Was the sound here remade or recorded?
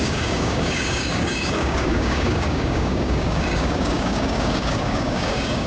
remade